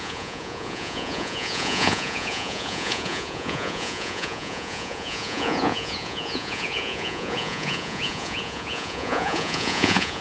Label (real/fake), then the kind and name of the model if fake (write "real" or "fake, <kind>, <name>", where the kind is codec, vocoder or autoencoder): fake, vocoder, Vocos